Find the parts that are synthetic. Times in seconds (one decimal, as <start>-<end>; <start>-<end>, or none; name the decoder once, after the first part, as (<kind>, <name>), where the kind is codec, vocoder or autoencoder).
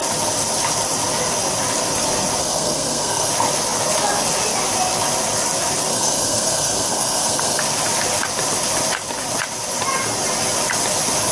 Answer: 2.4-3.3 (codec, SNAC); 5.9-7.6